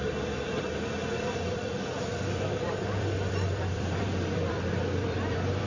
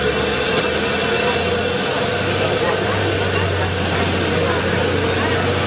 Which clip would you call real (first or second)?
second